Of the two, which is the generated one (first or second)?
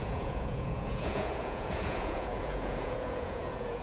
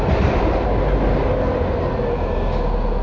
first